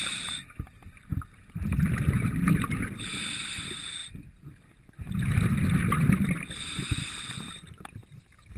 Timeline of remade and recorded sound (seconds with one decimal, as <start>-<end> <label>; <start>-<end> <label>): 0.0-8.6 recorded